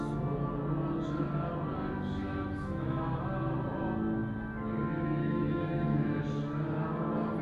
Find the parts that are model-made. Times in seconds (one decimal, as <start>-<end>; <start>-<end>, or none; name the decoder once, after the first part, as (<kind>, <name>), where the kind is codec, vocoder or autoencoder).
2.2-3.2 (autoencoder, DAC-VAE); 5.2-6.2